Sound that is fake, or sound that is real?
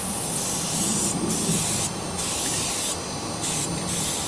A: real